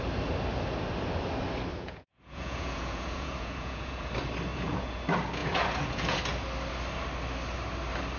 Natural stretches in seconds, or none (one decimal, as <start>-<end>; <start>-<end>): 0.0-1.7; 4.1-4.5; 5.0-5.4; 6.2-8.2